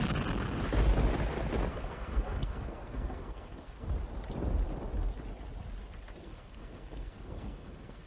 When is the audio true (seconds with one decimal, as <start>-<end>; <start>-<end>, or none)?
0.0-1.7; 3.9-6.2